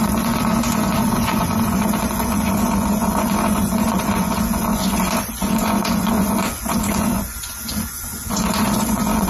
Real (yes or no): no